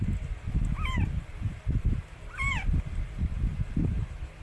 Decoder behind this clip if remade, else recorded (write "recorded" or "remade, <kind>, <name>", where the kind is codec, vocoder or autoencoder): recorded